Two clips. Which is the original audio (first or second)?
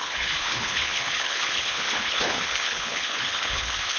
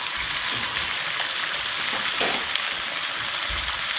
second